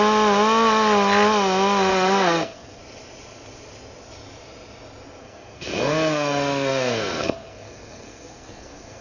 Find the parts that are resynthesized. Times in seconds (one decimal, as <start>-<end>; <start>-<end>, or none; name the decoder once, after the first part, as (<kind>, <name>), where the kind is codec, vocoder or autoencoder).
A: 1.9-2.8 (codec, SNAC); 5.2-9.0